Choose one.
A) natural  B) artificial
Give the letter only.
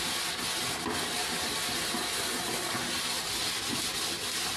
A